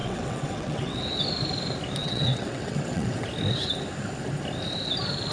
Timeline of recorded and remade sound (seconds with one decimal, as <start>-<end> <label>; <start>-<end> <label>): 0.0-1.0 remade; 1.0-2.0 recorded; 2.0-3.2 remade; 3.2-5.3 recorded